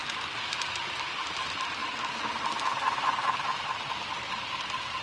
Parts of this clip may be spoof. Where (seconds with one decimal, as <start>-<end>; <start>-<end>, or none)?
0.6-1.8